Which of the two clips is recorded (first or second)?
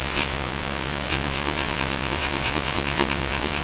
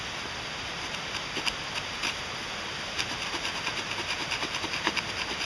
second